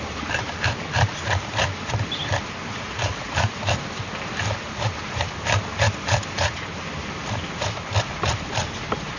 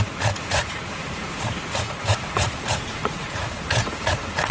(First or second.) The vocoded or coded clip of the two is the second